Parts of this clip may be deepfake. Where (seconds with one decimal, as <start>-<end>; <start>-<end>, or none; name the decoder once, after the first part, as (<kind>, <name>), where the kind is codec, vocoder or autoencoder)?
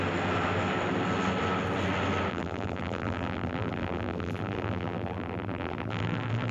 2.3-6.5 (vocoder, BigVGAN v2)